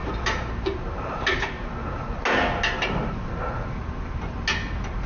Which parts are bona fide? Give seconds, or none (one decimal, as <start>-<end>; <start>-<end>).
0.0-5.1